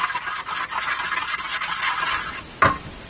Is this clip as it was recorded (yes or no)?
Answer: yes